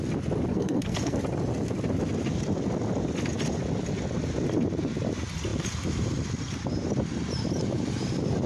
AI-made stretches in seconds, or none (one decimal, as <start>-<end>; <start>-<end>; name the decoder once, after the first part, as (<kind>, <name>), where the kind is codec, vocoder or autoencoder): 0.5-1.2 (codec, SNAC)